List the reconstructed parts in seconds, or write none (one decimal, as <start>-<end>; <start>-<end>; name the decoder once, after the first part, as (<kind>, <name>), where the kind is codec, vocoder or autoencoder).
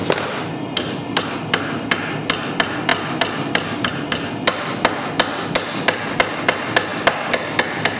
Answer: none